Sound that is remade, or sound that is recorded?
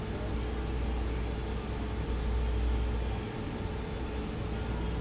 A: recorded